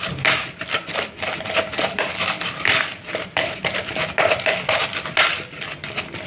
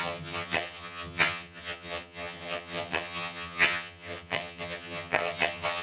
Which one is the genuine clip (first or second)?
first